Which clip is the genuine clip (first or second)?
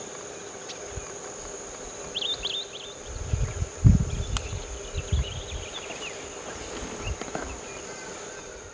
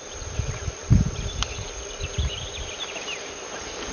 first